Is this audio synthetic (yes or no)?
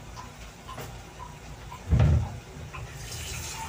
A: no